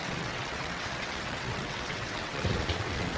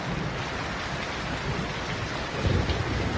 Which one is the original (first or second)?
second